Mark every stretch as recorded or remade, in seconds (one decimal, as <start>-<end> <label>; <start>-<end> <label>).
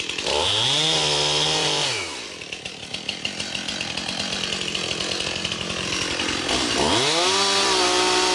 0.0-8.3 recorded